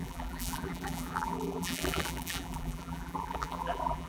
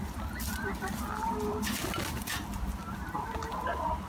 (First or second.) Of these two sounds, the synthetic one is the first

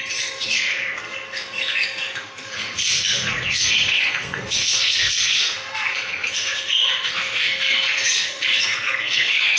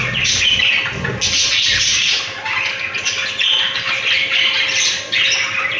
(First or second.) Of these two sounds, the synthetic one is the first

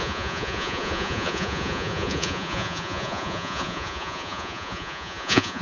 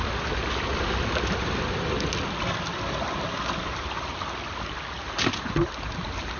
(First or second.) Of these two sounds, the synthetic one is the first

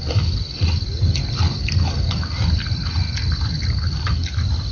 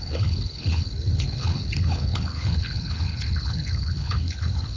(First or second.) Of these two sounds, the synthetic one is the second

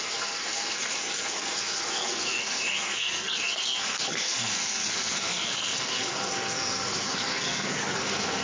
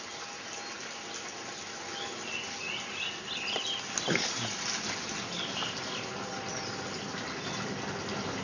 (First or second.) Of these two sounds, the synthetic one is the first